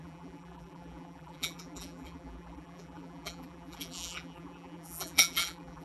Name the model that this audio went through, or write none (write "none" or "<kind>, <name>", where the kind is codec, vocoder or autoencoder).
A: vocoder, BigVGAN v2